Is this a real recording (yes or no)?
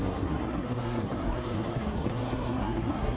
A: no